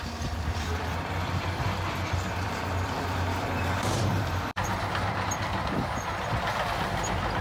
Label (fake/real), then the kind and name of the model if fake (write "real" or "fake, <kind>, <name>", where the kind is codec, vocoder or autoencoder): fake, vocoder, BigVGAN v2